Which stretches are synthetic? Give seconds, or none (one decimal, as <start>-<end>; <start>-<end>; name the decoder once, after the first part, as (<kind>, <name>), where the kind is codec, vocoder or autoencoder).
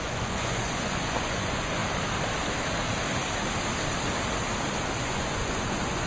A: 0.0-1.8 (vocoder, Vocos); 5.0-6.1